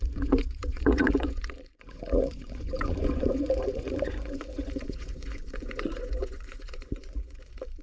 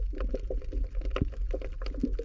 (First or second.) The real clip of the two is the second